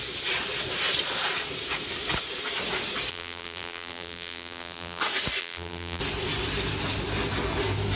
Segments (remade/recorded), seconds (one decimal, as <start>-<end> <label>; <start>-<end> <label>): 0.0-3.1 recorded; 3.1-5.0 remade; 5.0-5.4 recorded; 5.4-6.0 remade; 6.0-8.0 recorded